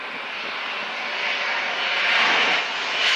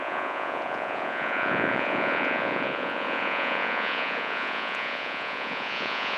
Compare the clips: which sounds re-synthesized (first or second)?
second